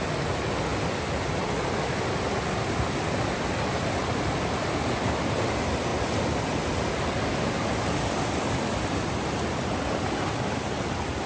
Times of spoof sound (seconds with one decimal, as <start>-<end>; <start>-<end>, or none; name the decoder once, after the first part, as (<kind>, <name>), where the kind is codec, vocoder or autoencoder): none